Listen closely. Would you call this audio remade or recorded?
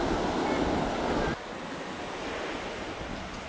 recorded